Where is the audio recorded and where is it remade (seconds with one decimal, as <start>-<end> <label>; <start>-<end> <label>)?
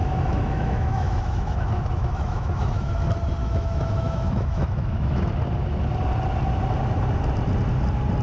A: 0.0-2.9 remade; 2.9-3.4 recorded; 3.4-5.3 remade; 5.3-8.2 recorded